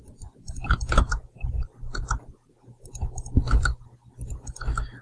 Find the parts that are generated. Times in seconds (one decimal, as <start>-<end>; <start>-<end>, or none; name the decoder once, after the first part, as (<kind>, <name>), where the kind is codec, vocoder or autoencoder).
none